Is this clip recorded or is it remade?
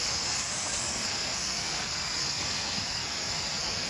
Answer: remade